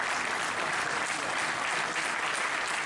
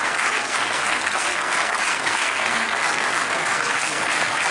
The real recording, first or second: first